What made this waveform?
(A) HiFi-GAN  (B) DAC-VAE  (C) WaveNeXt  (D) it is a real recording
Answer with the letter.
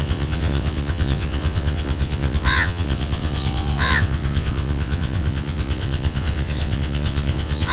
C